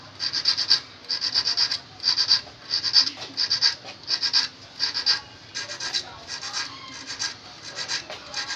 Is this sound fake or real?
real